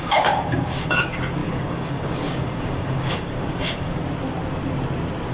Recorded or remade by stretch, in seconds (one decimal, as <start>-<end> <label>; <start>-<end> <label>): 0.0-4.0 remade; 4.0-5.3 recorded